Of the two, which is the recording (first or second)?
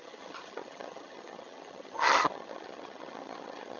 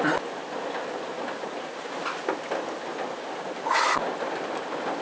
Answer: second